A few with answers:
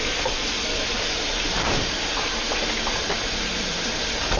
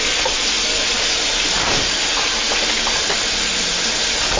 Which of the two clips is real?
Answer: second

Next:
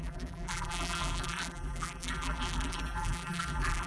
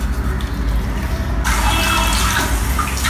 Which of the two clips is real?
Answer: second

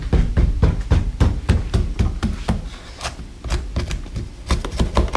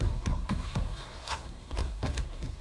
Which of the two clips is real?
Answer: first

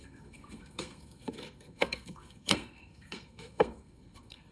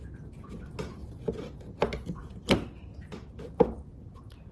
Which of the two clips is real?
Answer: second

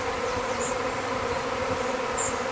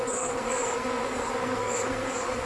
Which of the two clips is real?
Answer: first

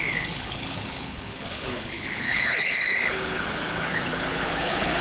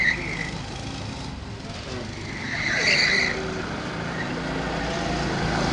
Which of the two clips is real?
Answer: second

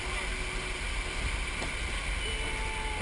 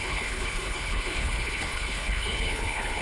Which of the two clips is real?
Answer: first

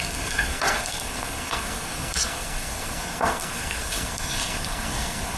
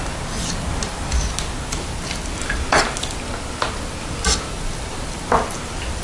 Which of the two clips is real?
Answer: second